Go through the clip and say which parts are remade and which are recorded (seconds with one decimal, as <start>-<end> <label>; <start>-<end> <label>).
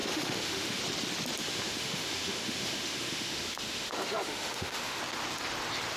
0.0-0.8 remade; 0.8-1.4 recorded; 1.4-5.0 remade; 5.0-6.0 recorded